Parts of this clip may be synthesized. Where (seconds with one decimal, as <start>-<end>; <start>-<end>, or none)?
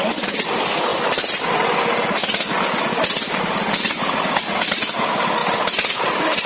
none